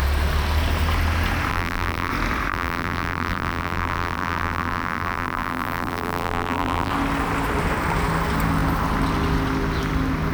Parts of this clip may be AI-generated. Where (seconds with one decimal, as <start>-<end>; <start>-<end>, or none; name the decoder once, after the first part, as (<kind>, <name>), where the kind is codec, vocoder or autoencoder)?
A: 1.5-2.1 (vocoder, BigVGAN v2); 2.5-6.9